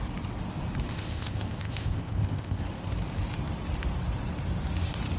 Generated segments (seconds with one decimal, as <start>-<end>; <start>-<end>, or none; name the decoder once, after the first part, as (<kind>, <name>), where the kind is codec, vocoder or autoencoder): 0.9-2.6 (codec, ZipCodec)